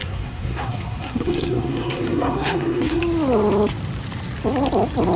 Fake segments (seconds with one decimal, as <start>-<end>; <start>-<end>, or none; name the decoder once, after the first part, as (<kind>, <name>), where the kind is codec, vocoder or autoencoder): 0.0-3.0 (codec, SNAC)